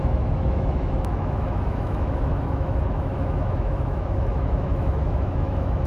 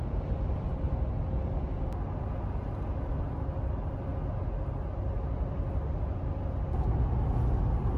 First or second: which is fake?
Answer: first